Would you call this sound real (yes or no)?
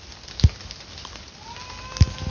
yes